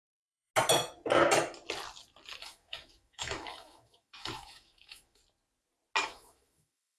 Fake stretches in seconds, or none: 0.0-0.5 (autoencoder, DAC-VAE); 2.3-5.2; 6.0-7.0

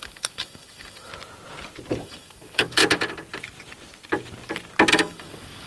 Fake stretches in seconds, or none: 0.0-1.1 (autoencoder, DAC-VAE); 2.0-2.8; 4.9-5.7

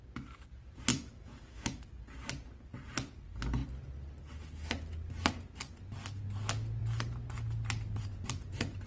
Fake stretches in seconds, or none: 0.9-1.8 (autoencoder, DAC-VAE)

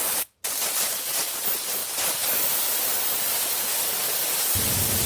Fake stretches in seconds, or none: none

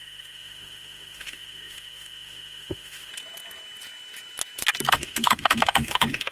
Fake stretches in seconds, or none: 0.0-3.1 (autoencoder, DAC-VAE); 4.9-6.3

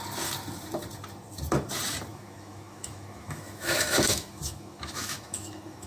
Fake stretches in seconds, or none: 2.1-5.9 (autoencoder, DAC-VAE)

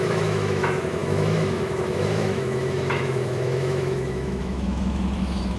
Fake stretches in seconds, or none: 0.0-5.6 (autoencoder, DAC-VAE)

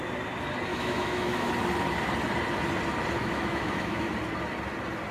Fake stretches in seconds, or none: 0.7-1.5 (autoencoder, DAC-VAE); 3.2-4.1